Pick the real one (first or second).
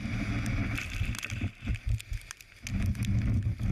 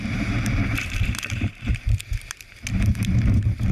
first